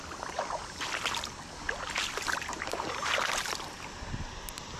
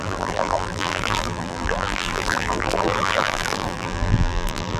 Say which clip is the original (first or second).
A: first